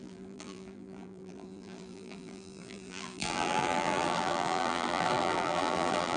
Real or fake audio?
fake